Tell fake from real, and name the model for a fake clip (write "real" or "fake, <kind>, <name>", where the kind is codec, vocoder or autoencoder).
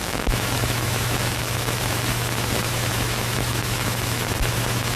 fake, autoencoder, DAC-VAE